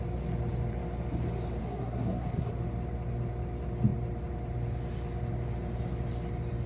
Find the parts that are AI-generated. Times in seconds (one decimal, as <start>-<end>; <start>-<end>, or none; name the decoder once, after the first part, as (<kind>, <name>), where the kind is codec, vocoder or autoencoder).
1.6-2.5 (codec, SNAC)